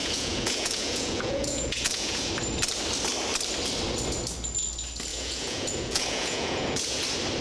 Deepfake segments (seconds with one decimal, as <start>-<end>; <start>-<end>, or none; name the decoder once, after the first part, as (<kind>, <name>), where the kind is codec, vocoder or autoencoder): 0.0-2.3 (vocoder, Vocos); 5.1-7.0